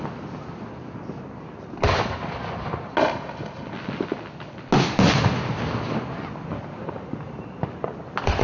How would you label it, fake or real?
real